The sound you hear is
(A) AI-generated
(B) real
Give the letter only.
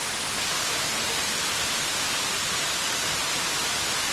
B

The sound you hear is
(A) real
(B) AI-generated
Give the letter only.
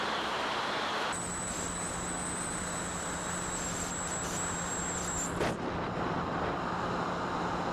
A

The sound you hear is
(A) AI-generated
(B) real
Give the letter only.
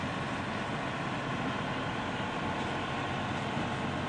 B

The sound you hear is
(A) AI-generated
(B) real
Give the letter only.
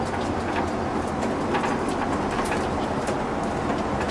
B